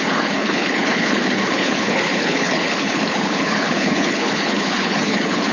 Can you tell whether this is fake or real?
fake